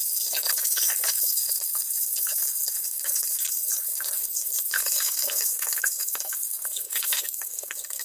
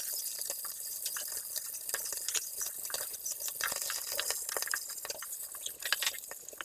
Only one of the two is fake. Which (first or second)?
first